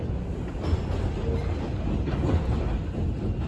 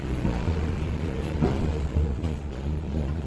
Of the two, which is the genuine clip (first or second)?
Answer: first